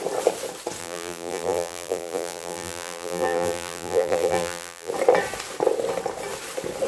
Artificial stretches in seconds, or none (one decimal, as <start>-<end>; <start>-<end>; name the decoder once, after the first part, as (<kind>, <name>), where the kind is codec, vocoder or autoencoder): 0.8-4.9 (vocoder, BigVGAN v2)